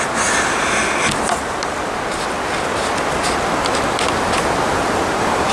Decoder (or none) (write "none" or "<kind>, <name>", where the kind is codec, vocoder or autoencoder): none